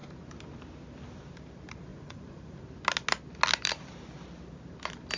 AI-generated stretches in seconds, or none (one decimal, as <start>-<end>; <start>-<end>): 1.9-2.6